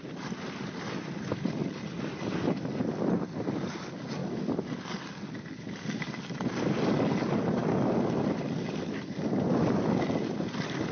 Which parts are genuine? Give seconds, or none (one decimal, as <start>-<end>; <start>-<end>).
0.0-10.9